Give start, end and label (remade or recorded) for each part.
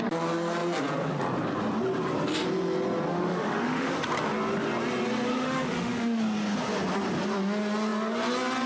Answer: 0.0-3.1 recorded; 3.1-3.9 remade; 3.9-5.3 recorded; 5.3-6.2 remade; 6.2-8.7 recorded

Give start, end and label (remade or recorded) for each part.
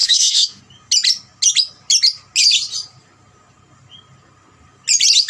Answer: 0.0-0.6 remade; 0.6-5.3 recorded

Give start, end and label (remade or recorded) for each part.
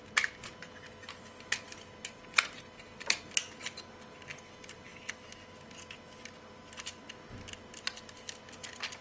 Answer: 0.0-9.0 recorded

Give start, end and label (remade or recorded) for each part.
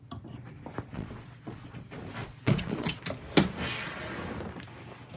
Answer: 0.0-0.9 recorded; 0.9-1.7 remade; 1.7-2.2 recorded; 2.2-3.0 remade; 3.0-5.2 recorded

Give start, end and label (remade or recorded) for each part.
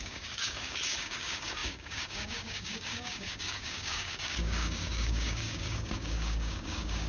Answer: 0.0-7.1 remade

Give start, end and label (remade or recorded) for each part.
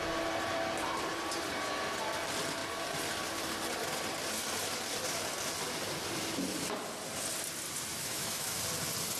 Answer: 0.0-7.9 recorded; 7.9-8.6 remade; 8.6-9.2 recorded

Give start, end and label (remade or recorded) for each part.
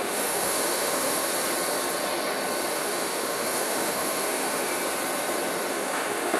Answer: 0.0-1.3 remade; 1.3-2.7 recorded; 2.7-4.7 remade; 4.7-5.7 recorded; 5.7-6.4 remade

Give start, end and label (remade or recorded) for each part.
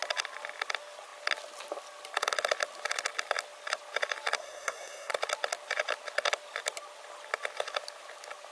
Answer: 0.0-4.4 recorded; 4.4-5.1 remade; 5.1-8.5 recorded